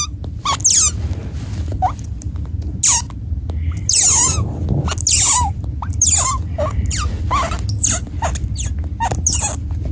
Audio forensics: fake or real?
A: real